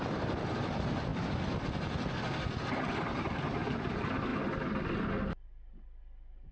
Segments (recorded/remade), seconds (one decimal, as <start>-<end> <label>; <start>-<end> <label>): 0.0-6.5 recorded